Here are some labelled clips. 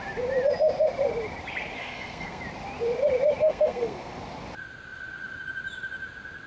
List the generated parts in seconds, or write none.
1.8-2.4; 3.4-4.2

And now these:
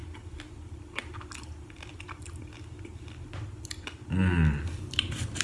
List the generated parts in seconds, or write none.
none

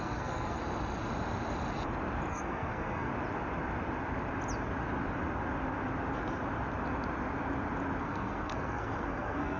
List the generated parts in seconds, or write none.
0.0-0.6; 2.3-3.1; 8.0-9.6